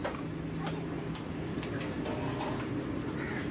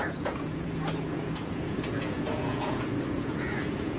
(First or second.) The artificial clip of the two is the second